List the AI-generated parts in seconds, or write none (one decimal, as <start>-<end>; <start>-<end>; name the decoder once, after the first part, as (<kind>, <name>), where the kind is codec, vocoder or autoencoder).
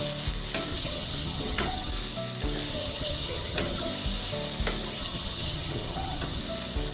0.7-1.9 (vocoder, HiFi-GAN); 2.7-3.9; 5.0-6.4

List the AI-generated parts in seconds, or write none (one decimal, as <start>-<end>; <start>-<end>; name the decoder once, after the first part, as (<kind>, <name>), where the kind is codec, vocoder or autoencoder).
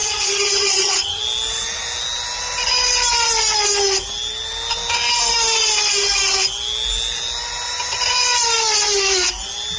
0.0-1.2 (vocoder, HiFi-GAN)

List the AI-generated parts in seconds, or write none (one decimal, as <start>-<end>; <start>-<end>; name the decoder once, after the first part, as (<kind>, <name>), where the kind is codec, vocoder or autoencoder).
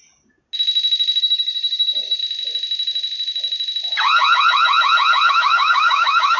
1.2-2.2 (codec, DAC); 5.3-6.4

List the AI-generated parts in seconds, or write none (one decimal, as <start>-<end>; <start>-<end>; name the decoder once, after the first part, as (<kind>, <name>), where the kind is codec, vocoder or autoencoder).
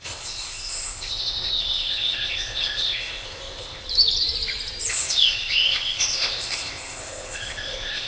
0.0-3.8 (codec, ZipCodec); 4.9-8.1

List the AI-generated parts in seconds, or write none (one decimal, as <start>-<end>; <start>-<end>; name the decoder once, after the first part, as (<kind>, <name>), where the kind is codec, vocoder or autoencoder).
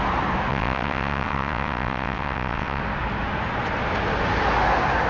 0.5-2.8 (vocoder, WaveNeXt)